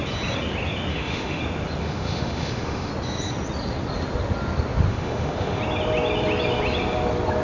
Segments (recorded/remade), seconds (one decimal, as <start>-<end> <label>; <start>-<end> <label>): 0.0-0.9 recorded; 0.9-1.4 remade; 1.4-1.8 recorded; 1.8-2.9 remade; 2.9-4.9 recorded; 4.9-5.6 remade; 5.6-7.4 recorded